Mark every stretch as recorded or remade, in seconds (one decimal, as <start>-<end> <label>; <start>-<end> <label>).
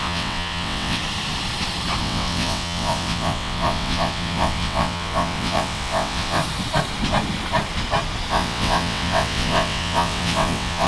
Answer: 0.0-1.0 remade; 1.0-2.0 recorded; 2.0-6.4 remade; 6.4-8.3 recorded; 8.3-10.9 remade